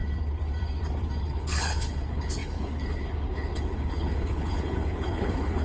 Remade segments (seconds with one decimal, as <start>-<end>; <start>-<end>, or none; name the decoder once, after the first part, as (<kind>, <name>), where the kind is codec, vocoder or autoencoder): 1.2-5.6 (codec, HILCodec)